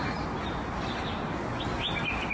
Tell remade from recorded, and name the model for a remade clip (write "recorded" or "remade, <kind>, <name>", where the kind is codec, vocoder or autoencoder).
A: recorded